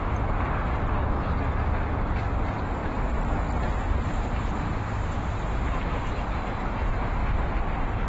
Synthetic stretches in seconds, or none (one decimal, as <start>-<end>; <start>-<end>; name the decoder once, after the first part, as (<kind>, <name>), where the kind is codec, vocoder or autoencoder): none

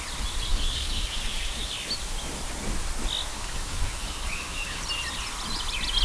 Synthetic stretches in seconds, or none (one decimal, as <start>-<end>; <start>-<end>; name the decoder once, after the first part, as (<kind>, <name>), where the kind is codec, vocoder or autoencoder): 0.5-1.7 (codec, DAC); 3.3-4.8